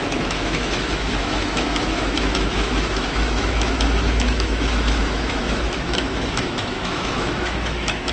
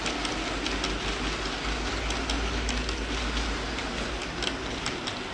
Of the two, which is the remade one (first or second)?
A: first